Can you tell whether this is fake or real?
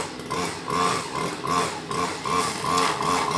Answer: real